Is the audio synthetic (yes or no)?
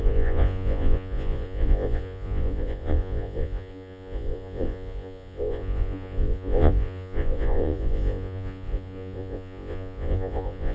yes